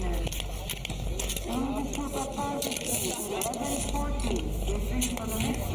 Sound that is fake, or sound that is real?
real